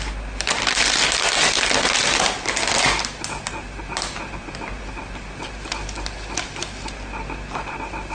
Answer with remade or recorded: recorded